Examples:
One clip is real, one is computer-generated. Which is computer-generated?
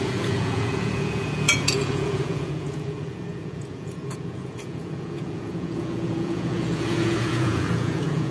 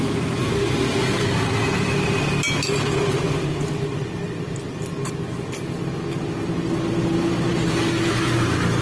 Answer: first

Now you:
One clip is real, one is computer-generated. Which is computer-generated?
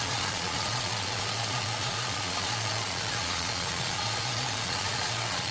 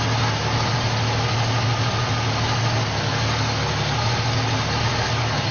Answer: first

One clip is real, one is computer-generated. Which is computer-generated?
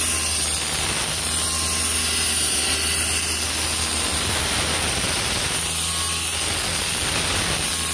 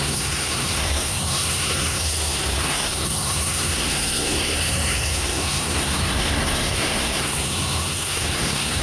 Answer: second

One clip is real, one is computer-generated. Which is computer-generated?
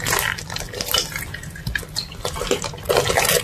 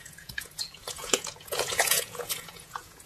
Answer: second